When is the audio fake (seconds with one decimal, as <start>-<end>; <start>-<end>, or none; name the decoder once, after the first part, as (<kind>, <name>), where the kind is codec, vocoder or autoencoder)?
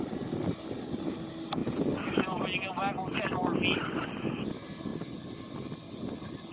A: none